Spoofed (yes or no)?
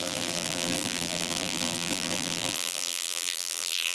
yes